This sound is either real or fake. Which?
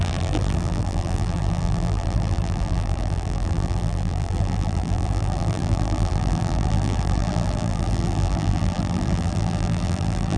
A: fake